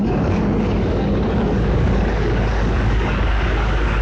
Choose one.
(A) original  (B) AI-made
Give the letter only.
B